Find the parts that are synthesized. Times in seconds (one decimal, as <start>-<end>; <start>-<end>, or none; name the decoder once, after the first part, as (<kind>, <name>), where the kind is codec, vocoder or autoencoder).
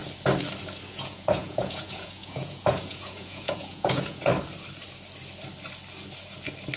0.9-4.3 (vocoder, Vocos)